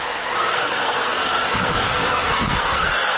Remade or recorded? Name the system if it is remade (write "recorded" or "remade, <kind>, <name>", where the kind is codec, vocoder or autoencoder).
remade, codec, SNAC